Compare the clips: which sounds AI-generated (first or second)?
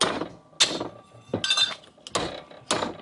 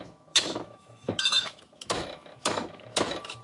second